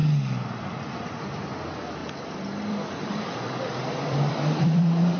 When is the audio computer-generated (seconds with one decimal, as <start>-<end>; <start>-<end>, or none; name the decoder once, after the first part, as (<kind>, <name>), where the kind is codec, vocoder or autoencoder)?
2.0-5.2 (vocoder, BigVGAN v2)